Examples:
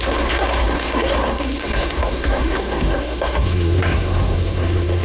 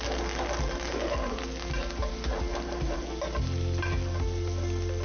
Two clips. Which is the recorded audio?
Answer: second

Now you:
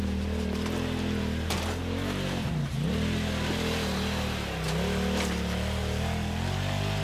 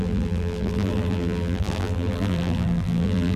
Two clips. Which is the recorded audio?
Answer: first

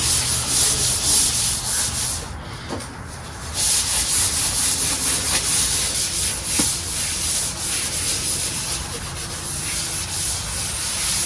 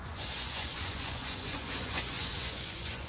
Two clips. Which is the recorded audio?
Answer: first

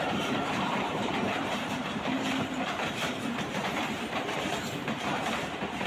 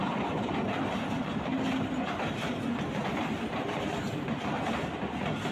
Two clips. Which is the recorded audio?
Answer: second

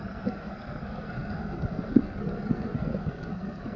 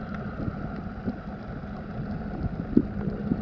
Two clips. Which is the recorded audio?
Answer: second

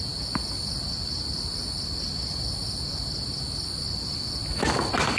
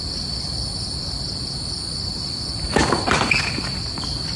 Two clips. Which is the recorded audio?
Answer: first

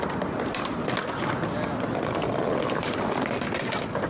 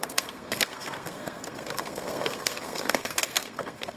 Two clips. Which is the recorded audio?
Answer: first